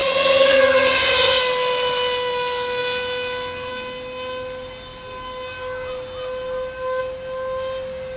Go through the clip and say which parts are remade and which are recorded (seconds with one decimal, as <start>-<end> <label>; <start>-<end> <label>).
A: 0.0-1.4 remade; 1.4-8.2 recorded